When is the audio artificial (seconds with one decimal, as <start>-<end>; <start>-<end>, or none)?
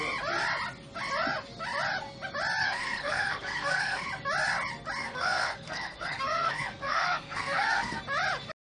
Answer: 2.6-4.1; 5.0-8.0